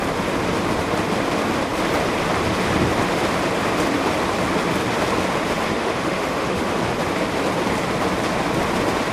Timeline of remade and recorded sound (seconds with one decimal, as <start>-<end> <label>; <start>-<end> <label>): 0.0-5.7 recorded; 5.7-6.7 remade; 6.7-9.1 recorded